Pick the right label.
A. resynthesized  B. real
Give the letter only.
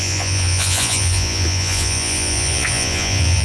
A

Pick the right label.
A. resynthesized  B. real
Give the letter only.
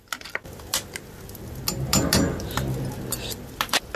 B